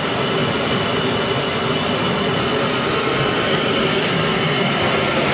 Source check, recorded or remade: recorded